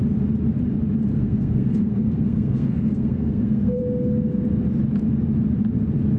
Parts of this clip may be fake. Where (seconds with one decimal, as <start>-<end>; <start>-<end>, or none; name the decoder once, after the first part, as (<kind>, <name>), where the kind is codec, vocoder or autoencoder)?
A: 1.1-3.8 (codec, SNAC)